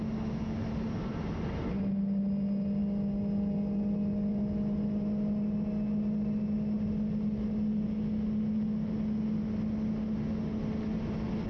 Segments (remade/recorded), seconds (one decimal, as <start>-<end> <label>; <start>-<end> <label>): 0.0-11.5 recorded